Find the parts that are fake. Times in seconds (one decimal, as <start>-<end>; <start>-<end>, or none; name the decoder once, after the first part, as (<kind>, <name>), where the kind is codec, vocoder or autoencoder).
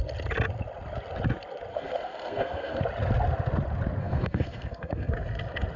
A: 1.7-2.8 (codec, SNAC); 4.0-5.1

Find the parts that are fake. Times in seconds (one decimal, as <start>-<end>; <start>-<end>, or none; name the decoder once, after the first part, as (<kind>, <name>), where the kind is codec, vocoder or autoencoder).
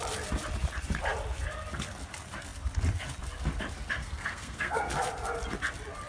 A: 4.0-4.9 (codec, SNAC)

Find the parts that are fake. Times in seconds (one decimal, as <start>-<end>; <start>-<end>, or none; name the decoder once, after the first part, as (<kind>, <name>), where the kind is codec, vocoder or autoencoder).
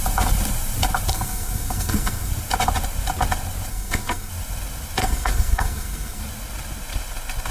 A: 1.1-2.3 (codec, SNAC); 3.7-4.3; 5.0-6.2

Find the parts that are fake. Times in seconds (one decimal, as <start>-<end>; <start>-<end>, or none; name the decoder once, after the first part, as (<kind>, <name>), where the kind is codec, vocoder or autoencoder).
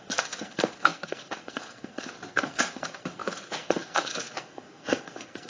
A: 0.0-5.5 (codec, SNAC)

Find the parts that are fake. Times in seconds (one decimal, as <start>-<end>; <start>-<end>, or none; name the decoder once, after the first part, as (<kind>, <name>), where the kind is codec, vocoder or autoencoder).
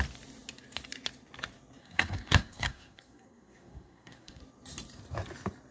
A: 1.8-4.4 (codec, SNAC)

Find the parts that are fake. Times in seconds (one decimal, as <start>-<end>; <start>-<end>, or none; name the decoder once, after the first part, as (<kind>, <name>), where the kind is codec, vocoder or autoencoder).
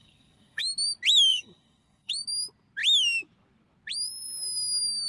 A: 0.0-0.6 (codec, SNAC); 1.3-2.1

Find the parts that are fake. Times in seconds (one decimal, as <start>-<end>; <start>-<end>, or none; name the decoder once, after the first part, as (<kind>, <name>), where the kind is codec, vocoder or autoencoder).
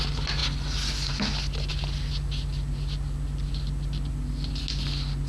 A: none